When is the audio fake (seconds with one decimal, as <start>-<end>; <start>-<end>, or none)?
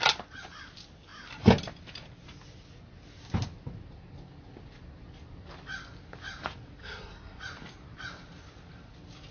6.8-7.4